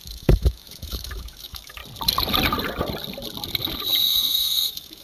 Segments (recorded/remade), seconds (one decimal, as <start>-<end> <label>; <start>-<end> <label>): 0.0-1.8 remade; 1.8-4.0 recorded; 4.0-5.0 remade